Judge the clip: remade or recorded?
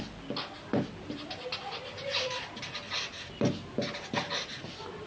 recorded